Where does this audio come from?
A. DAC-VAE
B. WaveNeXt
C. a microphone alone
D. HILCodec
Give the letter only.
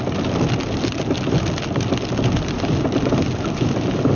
C